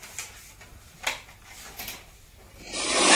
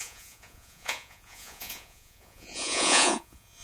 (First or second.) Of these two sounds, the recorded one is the first